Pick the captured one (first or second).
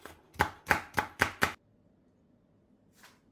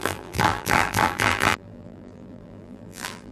first